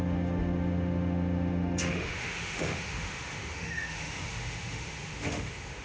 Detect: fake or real fake